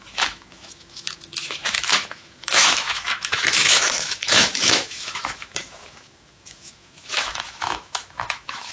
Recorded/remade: remade